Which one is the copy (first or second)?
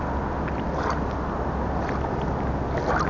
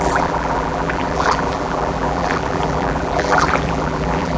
second